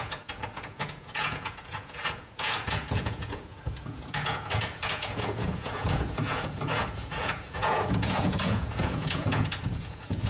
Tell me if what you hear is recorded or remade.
remade